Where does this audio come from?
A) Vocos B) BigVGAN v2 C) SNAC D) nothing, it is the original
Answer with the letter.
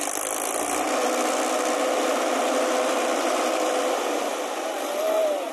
B